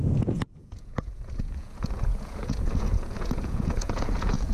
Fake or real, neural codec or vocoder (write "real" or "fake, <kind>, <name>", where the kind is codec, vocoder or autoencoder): fake, vocoder, Vocos